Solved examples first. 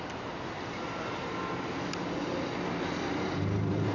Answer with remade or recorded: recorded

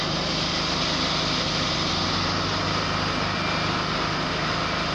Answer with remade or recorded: recorded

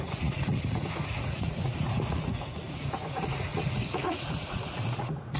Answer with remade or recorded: remade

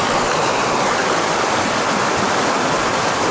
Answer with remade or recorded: recorded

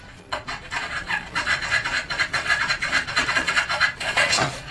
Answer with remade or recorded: remade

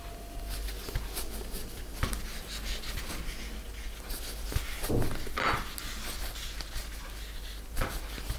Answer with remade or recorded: recorded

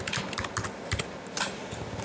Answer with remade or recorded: recorded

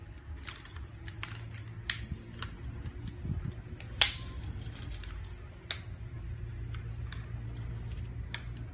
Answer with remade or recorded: recorded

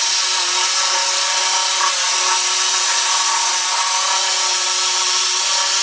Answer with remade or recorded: recorded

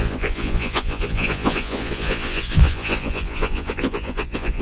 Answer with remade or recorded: remade